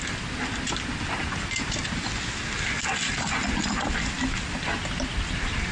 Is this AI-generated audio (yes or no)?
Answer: no